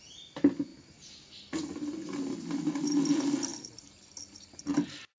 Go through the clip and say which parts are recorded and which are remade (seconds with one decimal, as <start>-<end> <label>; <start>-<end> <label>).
0.0-5.2 recorded